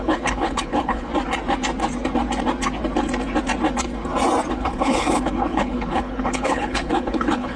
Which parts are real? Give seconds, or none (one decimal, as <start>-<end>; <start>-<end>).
1.1-4.5